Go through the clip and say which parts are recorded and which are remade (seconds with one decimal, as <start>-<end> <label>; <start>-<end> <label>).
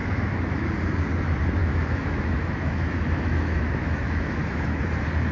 0.0-0.7 remade; 0.7-1.6 recorded; 1.6-4.8 remade; 4.8-5.3 recorded